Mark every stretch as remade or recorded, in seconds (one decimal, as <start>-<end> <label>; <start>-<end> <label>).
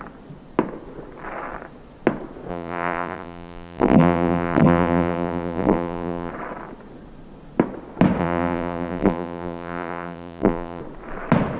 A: 0.0-2.5 recorded; 2.5-6.3 remade; 6.3-8.2 recorded; 8.2-10.8 remade; 10.8-11.6 recorded